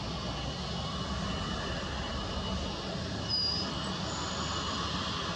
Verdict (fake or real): real